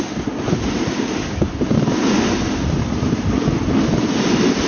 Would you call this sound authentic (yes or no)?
yes